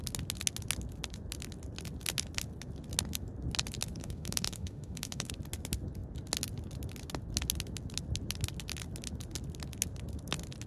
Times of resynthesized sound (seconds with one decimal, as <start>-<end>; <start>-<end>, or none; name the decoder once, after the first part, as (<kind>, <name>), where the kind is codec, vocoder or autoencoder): 4.0-5.3 (autoencoder, DAC-VAE)